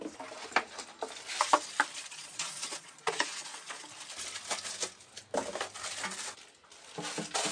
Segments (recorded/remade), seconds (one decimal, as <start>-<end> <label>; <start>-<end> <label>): 0.0-1.9 recorded; 1.9-3.8 remade; 3.8-7.5 recorded